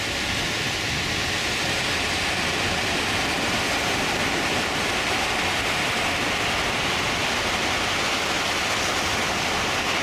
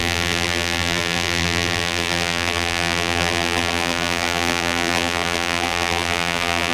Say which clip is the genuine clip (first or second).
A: first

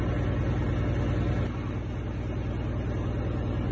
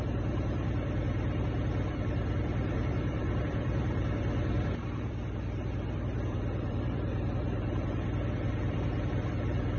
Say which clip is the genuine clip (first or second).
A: first